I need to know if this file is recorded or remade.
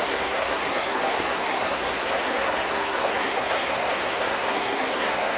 remade